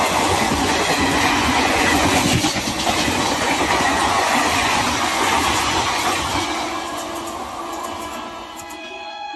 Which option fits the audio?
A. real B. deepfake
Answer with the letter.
B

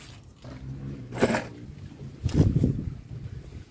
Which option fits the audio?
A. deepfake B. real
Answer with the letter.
B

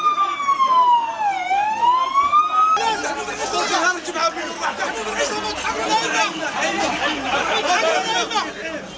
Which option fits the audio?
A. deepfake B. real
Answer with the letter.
B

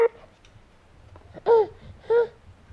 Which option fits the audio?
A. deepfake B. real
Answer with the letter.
B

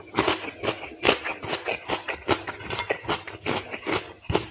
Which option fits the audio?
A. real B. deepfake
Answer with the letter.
A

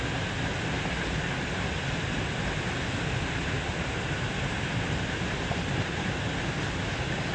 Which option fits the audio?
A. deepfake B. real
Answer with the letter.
B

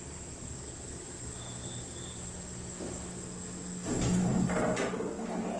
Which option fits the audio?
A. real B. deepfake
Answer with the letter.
A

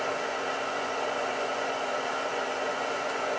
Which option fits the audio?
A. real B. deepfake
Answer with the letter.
B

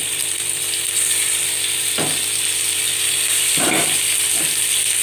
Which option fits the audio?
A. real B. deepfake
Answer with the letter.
A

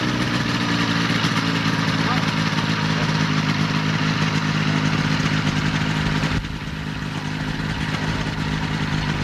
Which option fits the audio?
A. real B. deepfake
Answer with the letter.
A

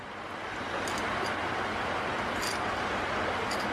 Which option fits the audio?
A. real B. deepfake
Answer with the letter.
A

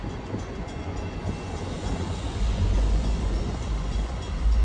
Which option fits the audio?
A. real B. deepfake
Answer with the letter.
B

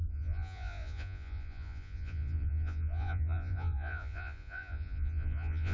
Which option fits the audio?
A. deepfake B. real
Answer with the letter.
A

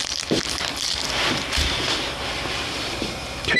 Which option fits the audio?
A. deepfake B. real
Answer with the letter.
B